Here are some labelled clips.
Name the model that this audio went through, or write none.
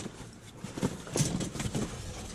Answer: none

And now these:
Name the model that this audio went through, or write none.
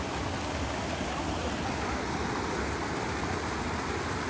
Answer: none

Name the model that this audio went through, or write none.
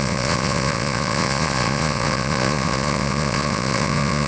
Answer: vocoder, Vocos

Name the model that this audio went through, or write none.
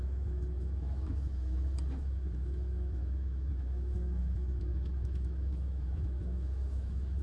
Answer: autoencoder, DAC-VAE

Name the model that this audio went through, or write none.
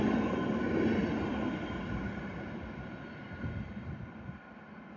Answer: none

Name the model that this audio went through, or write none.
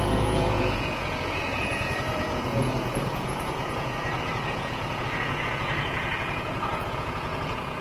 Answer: vocoder, Vocos